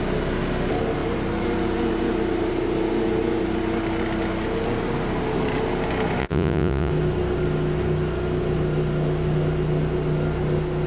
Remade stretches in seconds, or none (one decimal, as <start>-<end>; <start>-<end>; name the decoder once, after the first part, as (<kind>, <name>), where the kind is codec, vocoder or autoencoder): 6.2-6.9 (vocoder, Vocos)